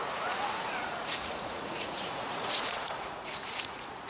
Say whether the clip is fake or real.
fake